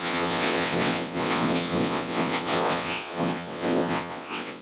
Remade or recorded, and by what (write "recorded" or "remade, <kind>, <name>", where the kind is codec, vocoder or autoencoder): remade, vocoder, WaveNeXt